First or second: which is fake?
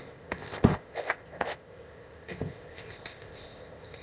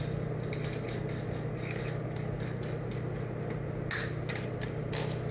first